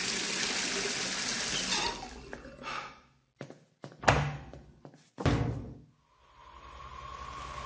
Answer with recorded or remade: recorded